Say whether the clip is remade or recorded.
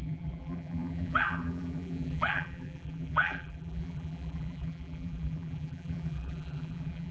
remade